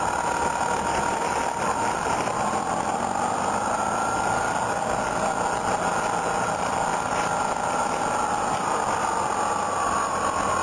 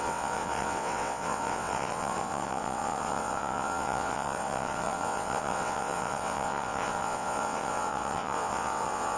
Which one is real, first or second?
first